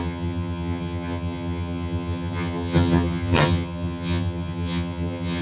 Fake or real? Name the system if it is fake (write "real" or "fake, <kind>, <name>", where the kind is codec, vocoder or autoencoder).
fake, vocoder, HiFi-GAN